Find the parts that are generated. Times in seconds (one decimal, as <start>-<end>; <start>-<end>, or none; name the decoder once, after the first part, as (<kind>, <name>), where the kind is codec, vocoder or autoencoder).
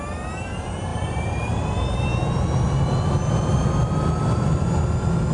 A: none